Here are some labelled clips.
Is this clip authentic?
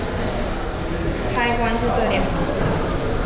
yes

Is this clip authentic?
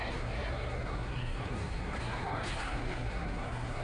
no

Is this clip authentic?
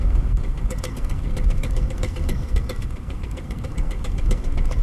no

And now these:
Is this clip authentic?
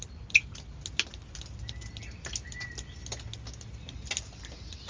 yes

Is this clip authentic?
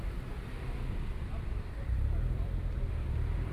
no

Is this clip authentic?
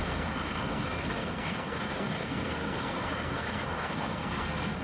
no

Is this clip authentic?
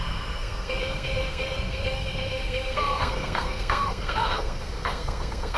no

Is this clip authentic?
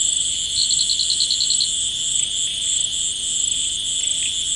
yes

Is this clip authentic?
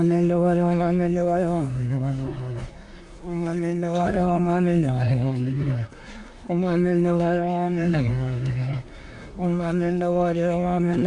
no